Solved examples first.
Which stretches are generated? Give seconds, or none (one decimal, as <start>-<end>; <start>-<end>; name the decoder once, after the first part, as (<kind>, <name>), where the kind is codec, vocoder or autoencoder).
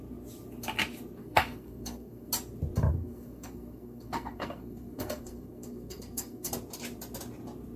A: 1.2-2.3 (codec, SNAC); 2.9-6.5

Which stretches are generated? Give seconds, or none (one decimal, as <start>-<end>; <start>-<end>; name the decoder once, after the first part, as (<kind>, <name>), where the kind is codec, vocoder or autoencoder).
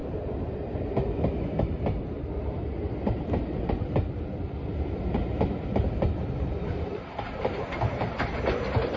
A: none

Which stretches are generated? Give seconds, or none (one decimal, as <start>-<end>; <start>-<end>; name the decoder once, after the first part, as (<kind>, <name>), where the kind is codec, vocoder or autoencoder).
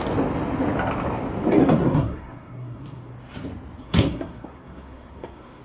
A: 1.6-3.1 (codec, SNAC); 3.8-5.6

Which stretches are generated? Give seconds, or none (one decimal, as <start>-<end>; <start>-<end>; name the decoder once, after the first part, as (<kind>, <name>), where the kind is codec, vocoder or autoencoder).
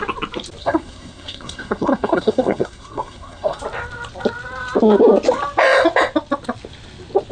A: 0.6-3.6 (codec, SNAC)